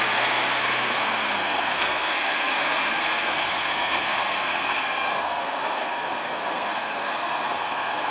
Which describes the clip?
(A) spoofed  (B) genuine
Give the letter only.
A